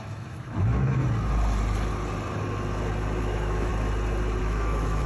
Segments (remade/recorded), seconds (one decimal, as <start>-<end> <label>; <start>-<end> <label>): 0.0-1.0 remade; 1.0-3.2 recorded; 3.2-3.7 remade; 3.7-4.4 recorded; 4.4-5.1 remade